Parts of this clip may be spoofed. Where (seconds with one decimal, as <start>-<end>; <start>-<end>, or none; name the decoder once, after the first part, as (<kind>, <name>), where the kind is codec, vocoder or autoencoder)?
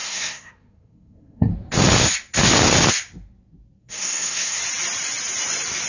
0.0-1.5 (codec, SNAC); 3.8-4.6